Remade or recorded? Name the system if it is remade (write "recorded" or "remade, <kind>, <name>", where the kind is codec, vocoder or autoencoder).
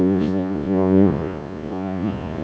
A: remade, vocoder, Vocos